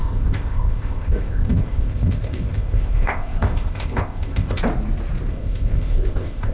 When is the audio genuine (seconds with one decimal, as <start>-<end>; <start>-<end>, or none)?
4.6-5.3